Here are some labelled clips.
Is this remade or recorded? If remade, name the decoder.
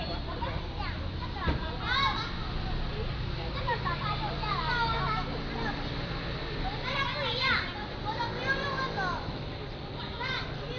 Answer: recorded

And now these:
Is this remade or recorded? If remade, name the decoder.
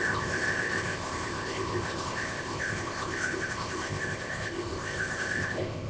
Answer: remade, codec, ZipCodec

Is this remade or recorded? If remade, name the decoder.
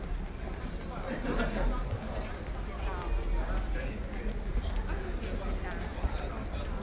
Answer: recorded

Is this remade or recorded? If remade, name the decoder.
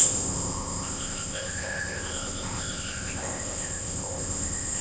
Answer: remade, codec, ZipCodec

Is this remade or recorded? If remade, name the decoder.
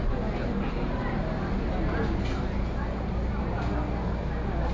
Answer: recorded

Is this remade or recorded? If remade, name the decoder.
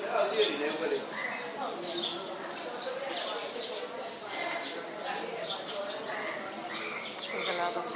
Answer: recorded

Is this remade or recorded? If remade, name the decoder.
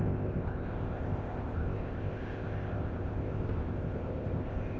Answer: remade, codec, ZipCodec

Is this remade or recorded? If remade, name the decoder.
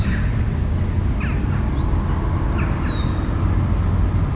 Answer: recorded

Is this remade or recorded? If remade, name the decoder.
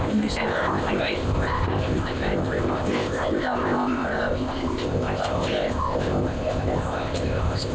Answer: remade, codec, ZipCodec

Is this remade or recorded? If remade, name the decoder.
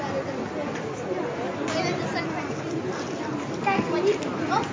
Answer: recorded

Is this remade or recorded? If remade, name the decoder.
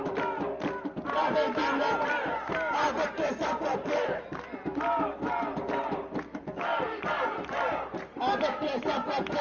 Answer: recorded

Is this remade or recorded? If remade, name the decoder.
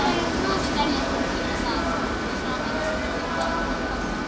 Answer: recorded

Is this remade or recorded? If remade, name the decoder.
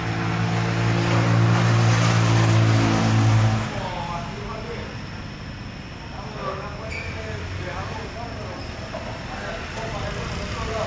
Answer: recorded